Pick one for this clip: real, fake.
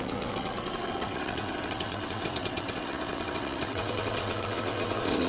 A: fake